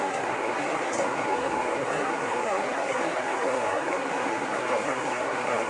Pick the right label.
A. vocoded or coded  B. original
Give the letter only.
A